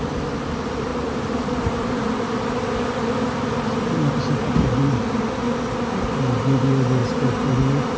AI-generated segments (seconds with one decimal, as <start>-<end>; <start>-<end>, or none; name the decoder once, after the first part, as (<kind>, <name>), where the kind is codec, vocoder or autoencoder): 0.9-2.2 (vocoder, BigVGAN v2); 7.0-7.5